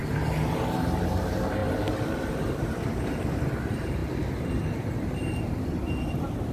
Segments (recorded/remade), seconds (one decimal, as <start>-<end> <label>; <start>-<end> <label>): 0.0-1.2 recorded; 1.2-4.0 remade; 4.0-6.5 recorded